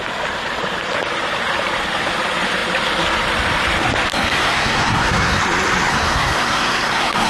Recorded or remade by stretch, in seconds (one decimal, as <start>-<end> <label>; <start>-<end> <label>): 0.0-4.1 recorded; 4.1-5.4 remade; 5.4-5.9 recorded; 5.9-7.3 remade